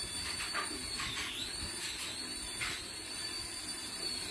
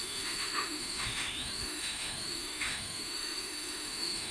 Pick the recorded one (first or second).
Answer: first